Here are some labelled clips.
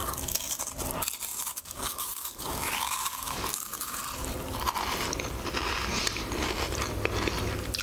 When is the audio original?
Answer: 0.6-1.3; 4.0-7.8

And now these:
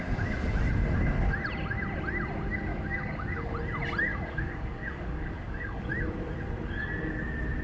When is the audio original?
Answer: 0.0-2.7; 3.5-4.1; 5.8-7.6

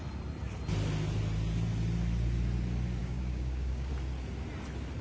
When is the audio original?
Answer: 0.0-3.0; 3.9-5.0

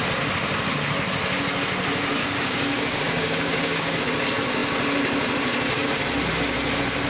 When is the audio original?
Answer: 0.0-2.2; 4.0-7.1

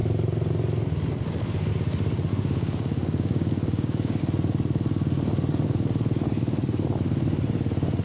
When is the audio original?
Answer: 0.0-2.3; 4.2-8.0

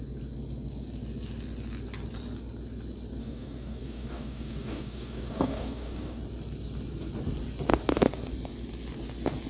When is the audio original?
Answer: 0.0-3.2; 6.2-9.5